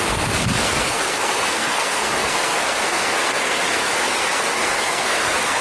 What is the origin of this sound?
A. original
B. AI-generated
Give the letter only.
B